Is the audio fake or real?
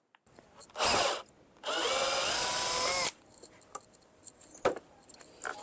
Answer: real